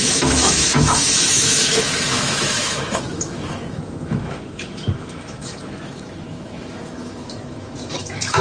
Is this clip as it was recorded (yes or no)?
no